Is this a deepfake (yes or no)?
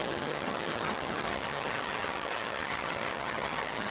yes